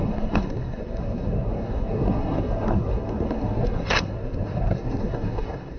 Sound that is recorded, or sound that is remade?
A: remade